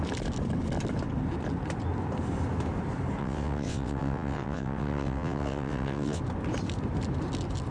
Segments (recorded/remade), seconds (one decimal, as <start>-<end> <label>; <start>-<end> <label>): 0.0-3.2 recorded; 3.2-6.2 remade; 6.2-7.7 recorded